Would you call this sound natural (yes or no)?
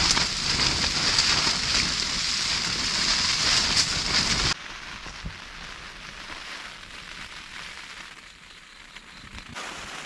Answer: yes